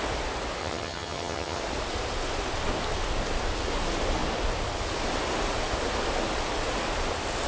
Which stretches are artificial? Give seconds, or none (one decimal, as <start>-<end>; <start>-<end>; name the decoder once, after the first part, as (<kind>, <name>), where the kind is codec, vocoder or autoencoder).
0.6-1.6 (vocoder, HiFi-GAN)